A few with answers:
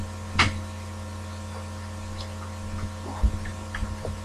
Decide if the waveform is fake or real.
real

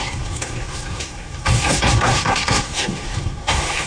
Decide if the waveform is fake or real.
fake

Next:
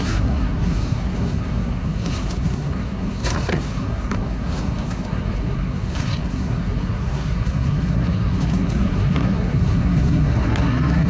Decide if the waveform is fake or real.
fake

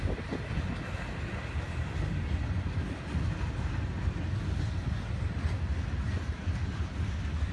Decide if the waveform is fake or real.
real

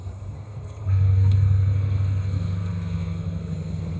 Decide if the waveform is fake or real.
fake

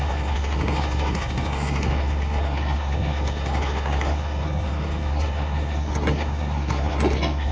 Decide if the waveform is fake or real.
fake